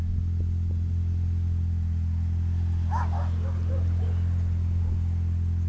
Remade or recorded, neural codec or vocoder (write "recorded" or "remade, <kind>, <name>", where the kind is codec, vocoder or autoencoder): recorded